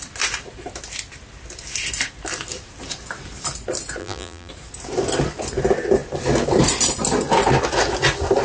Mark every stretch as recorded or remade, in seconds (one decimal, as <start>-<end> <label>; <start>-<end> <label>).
0.0-4.0 recorded; 4.0-4.5 remade; 4.5-8.4 recorded